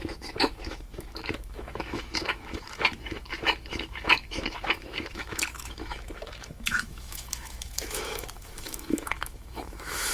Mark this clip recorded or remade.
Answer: remade